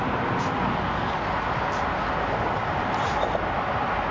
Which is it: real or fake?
real